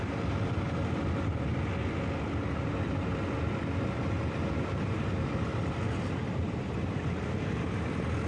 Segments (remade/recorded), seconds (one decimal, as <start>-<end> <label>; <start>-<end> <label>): 0.0-8.3 recorded